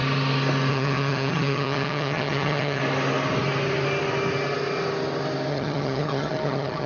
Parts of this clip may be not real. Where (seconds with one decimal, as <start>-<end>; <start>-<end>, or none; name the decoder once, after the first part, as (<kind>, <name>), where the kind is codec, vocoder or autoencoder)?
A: 0.7-2.8 (vocoder, HiFi-GAN); 5.5-6.9